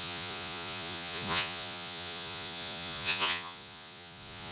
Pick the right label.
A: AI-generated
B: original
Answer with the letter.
A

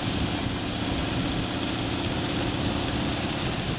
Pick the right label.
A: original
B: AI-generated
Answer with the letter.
A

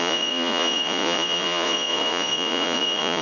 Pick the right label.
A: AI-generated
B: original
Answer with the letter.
A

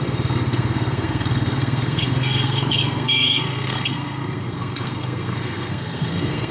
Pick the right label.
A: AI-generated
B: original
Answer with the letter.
A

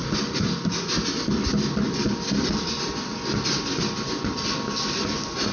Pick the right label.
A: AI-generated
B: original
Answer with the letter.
B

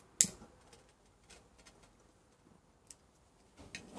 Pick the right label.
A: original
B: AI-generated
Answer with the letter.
A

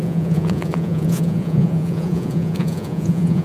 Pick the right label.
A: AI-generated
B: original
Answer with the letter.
A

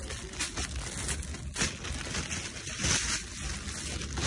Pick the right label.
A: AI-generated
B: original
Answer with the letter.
B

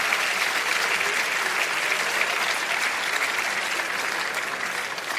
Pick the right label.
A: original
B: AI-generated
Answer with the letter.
A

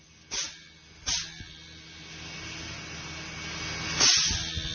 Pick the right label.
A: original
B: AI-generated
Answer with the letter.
A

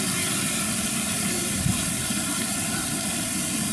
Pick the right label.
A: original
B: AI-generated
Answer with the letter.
A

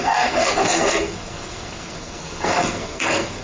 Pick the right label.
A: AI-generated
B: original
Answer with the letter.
A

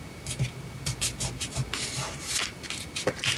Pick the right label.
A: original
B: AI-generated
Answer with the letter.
A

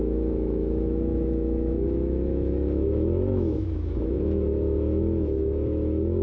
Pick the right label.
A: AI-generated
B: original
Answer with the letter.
A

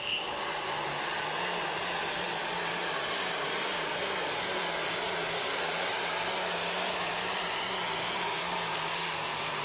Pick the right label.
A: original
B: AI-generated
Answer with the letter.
A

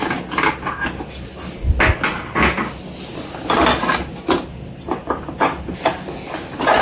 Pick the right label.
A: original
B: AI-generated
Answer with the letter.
A